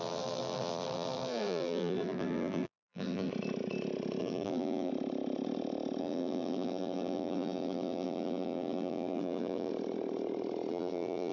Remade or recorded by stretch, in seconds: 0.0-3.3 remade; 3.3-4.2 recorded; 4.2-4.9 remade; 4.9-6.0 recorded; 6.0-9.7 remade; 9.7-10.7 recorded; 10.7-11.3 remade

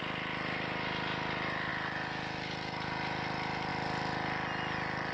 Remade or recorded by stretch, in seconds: 0.0-5.1 recorded